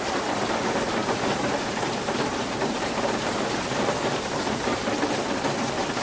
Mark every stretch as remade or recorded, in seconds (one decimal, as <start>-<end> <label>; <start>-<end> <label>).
0.0-4.8 remade; 4.8-5.6 recorded; 5.6-6.0 remade

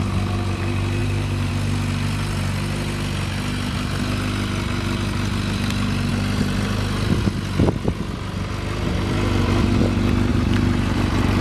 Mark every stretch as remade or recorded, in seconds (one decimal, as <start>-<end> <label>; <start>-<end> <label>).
0.0-1.0 recorded; 1.0-1.5 remade; 1.5-10.3 recorded; 10.3-11.4 remade

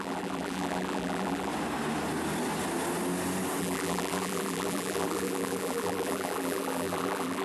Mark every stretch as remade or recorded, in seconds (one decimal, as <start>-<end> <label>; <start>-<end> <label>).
0.0-1.5 remade; 1.5-3.6 recorded; 3.6-7.4 remade